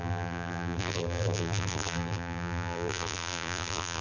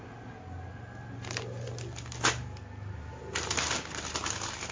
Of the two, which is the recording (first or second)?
second